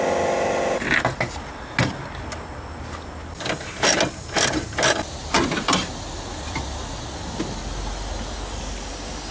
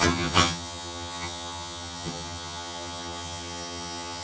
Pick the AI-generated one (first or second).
second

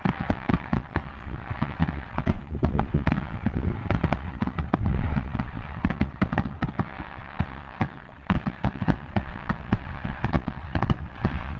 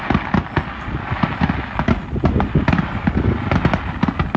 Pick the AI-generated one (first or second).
first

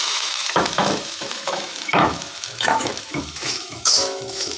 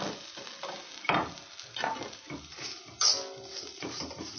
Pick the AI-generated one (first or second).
first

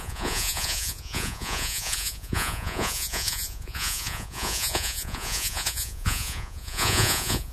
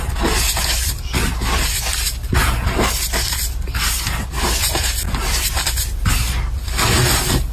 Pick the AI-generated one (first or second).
first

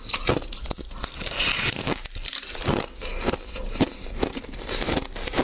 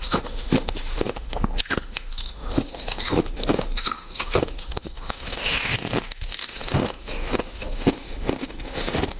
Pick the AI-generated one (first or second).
second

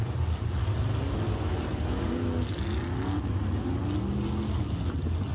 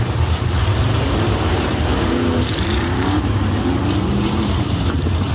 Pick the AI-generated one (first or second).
second